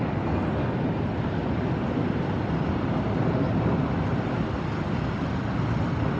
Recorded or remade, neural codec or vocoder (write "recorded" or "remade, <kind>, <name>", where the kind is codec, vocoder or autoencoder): recorded